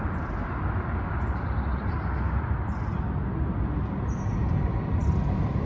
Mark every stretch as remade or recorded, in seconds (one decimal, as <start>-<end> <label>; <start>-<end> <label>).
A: 0.0-5.7 recorded